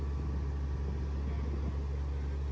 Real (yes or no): yes